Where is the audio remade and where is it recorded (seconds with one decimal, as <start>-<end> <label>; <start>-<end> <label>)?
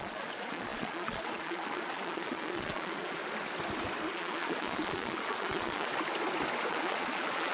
0.0-3.2 remade; 3.2-4.1 recorded; 4.1-5.9 remade; 5.9-6.7 recorded; 6.7-7.5 remade